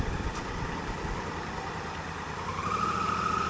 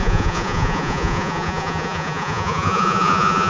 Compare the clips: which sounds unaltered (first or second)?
first